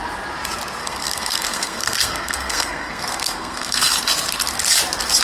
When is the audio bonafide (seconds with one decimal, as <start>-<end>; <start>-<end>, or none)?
0.0-0.8; 3.9-5.2